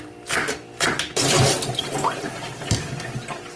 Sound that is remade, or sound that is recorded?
recorded